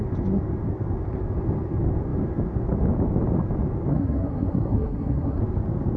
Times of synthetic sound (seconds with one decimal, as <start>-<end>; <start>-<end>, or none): 3.9-5.4